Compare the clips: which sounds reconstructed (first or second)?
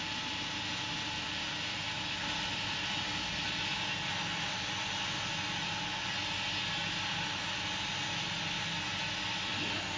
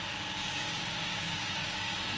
second